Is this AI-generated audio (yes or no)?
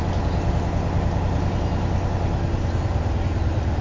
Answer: no